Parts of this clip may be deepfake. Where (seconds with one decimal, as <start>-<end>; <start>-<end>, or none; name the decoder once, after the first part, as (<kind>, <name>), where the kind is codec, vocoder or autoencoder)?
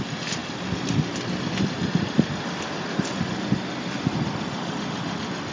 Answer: none